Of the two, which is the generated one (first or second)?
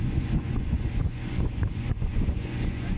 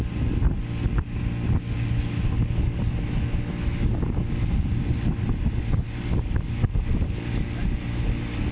first